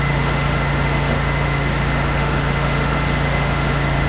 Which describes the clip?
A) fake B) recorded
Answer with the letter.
A